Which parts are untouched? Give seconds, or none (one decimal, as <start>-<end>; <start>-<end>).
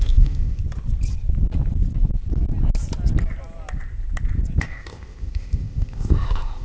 0.6-4.6